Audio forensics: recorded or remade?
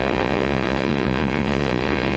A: remade